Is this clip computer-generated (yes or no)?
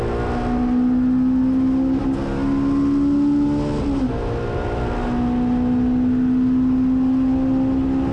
no